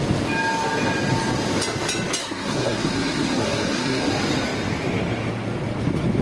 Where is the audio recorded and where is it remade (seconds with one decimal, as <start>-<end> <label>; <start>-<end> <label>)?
0.0-2.2 recorded; 2.2-4.1 remade; 4.1-6.2 recorded